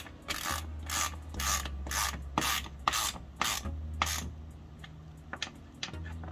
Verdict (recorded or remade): recorded